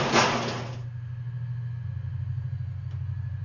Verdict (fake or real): real